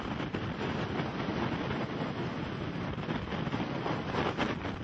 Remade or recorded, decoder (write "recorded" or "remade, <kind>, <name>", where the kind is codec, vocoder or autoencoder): recorded